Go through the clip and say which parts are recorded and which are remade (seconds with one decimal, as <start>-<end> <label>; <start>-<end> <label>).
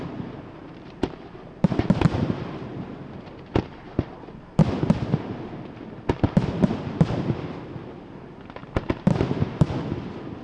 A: 0.0-0.6 recorded; 0.6-2.3 remade; 2.3-8.6 recorded; 8.6-9.4 remade; 9.4-10.4 recorded